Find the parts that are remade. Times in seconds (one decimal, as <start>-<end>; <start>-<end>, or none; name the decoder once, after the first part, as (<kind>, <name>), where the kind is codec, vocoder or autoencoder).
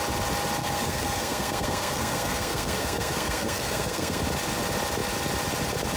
0.6-4.2 (codec, SNAC)